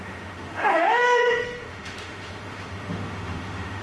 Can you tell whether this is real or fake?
fake